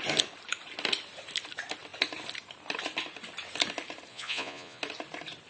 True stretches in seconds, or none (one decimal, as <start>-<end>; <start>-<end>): 0.0-4.1; 4.8-5.5